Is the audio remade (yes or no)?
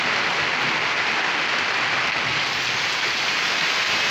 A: no